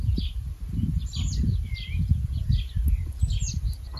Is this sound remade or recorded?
recorded